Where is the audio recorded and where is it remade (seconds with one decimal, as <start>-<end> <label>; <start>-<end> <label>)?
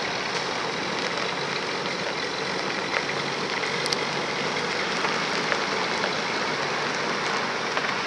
0.0-7.4 recorded; 7.4-8.1 remade